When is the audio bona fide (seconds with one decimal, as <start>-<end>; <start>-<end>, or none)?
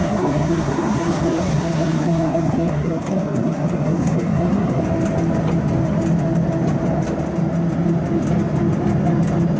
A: 4.8-9.6